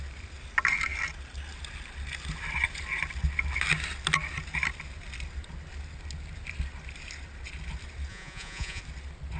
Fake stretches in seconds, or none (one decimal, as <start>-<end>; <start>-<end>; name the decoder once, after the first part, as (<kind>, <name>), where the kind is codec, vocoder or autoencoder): 8.1-8.8 (vocoder, Vocos)